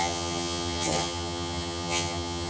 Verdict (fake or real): fake